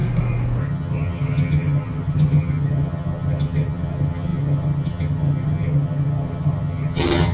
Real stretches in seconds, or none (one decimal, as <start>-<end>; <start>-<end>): 0.0-0.6